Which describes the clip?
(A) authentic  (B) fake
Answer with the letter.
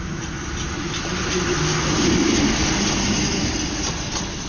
A